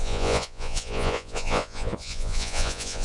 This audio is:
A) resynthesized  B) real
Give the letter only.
A